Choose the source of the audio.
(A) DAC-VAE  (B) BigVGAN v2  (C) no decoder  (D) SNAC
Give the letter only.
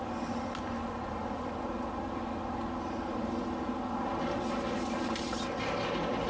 C